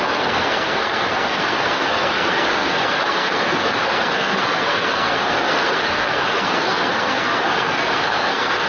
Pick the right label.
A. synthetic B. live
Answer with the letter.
A